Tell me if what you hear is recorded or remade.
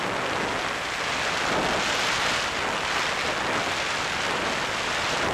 recorded